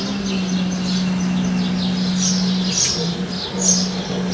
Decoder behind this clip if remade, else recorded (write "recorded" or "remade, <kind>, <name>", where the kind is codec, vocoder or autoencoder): recorded